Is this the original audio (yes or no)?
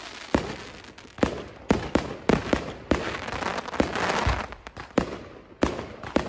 yes